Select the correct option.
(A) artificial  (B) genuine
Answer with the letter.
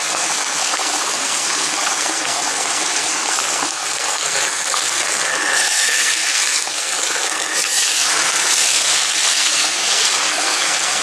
A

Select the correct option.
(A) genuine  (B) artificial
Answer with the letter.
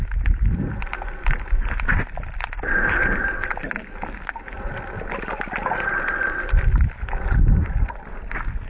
A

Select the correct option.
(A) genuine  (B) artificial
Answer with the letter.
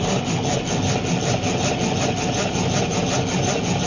A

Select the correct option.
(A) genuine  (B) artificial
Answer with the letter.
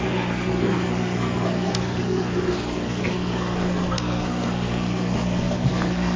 B